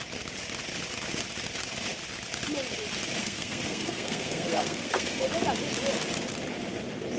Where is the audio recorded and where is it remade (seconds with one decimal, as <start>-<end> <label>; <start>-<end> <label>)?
0.0-3.2 recorded; 3.2-5.3 remade; 5.3-7.2 recorded